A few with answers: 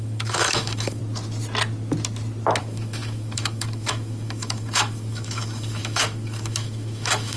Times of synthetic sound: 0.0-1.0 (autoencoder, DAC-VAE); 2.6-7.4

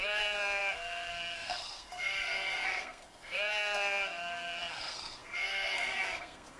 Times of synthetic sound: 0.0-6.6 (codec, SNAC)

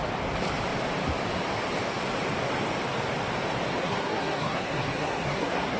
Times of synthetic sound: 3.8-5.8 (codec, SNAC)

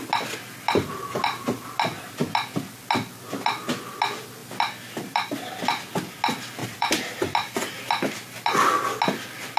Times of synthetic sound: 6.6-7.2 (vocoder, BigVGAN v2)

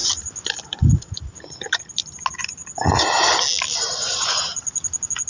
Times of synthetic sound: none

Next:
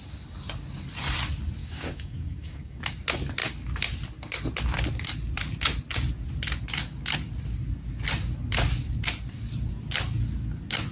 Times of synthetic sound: 1.6-2.8 (codec, DAC)

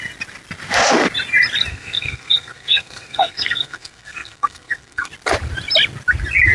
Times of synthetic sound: 1.7-5.1 (codec, SNAC)

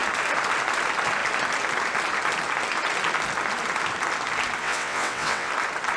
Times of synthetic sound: 4.6-5.5 (vocoder, WaveNeXt)